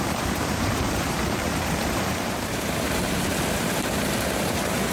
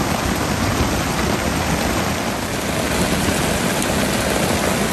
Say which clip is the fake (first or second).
first